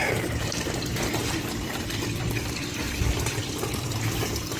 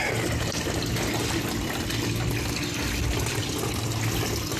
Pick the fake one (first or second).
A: first